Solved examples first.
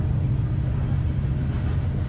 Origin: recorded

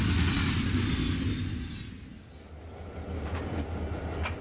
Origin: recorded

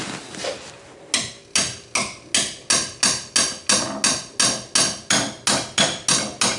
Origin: recorded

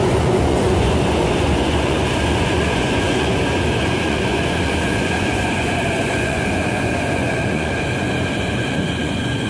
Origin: remade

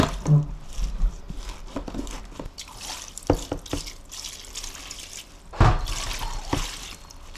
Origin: recorded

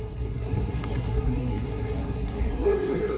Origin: remade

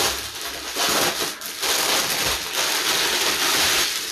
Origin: recorded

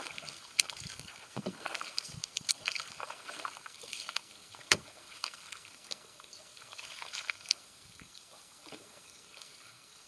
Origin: remade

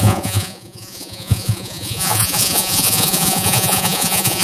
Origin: remade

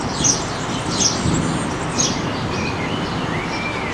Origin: recorded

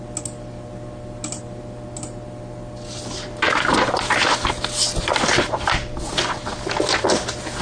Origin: recorded